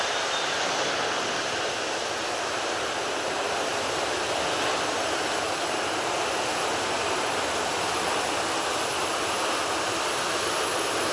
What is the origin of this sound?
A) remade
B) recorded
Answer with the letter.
B